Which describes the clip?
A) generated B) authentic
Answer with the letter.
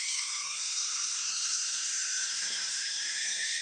A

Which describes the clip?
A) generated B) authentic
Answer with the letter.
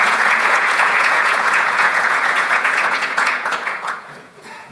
A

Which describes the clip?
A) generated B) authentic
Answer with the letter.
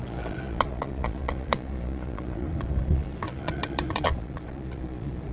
A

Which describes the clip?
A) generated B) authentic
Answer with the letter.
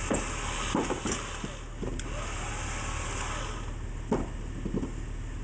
B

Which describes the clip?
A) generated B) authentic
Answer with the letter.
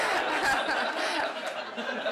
B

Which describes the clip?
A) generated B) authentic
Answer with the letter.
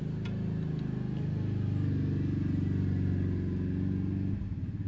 B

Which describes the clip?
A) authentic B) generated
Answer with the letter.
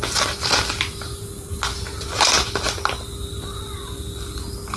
A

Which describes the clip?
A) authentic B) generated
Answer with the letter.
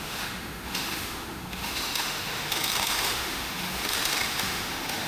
B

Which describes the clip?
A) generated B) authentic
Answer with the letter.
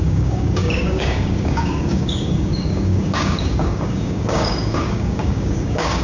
A